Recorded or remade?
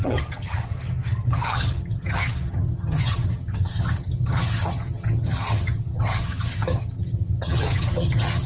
remade